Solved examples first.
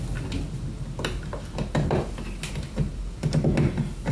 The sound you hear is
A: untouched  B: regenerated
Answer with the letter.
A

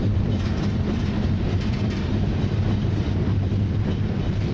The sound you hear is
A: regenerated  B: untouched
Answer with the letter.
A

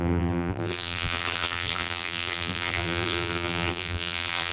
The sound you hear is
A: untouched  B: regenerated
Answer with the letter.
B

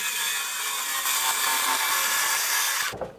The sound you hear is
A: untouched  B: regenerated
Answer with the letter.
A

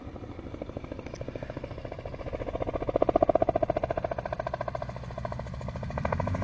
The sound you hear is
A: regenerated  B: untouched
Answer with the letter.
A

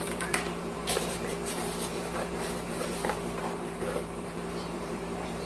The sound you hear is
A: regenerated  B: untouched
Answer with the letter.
A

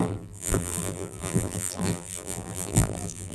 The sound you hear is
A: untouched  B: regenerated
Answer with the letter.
B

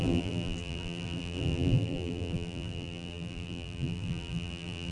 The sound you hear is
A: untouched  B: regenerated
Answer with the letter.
B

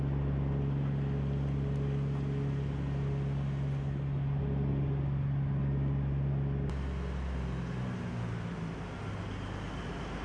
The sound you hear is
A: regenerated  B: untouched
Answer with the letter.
B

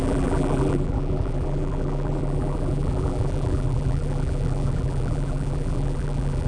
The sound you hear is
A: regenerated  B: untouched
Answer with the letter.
A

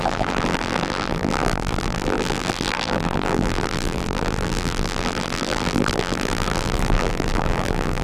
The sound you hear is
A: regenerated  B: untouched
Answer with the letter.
A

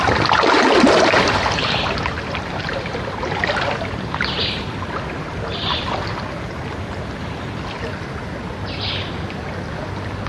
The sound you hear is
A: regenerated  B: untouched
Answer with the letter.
B